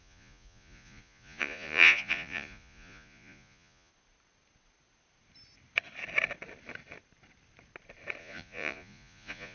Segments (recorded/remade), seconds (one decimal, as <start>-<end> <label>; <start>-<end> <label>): 0.0-3.9 remade; 3.9-8.2 recorded; 8.2-9.5 remade